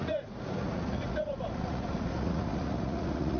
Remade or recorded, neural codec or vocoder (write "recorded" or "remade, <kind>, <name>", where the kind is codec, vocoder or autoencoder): remade, vocoder, Vocos